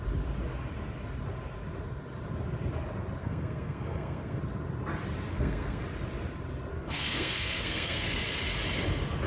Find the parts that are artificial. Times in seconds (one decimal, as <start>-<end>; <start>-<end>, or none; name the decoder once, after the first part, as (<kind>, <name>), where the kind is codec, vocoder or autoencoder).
3.2-4.4 (codec, SNAC); 5.3-5.8; 6.7-8.2